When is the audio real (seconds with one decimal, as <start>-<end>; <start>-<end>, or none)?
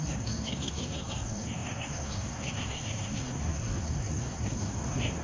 none